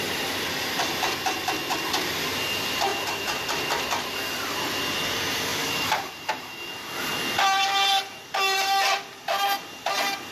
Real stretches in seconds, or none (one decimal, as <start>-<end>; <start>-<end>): 0.0-5.5; 6.7-10.3